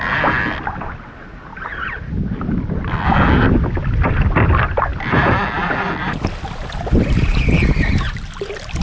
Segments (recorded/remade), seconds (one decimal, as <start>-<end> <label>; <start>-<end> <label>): 0.0-8.8 recorded